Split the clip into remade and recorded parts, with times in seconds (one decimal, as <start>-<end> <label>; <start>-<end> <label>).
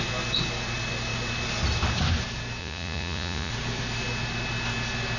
0.0-2.6 recorded; 2.6-3.5 remade; 3.5-5.2 recorded